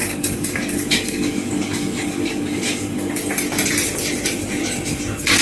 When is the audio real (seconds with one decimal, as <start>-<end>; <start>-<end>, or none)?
3.1-5.4